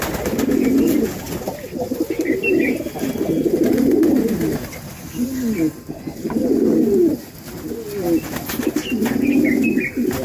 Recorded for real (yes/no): yes